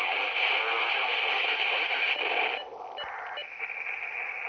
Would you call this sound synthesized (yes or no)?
no